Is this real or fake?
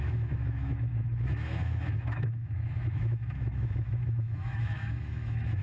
fake